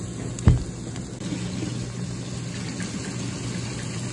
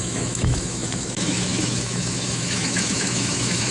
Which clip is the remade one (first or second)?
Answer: second